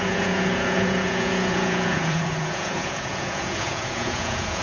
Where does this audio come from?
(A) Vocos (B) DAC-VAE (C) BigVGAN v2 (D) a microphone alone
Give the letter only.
A